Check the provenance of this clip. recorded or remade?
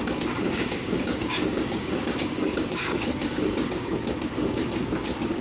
remade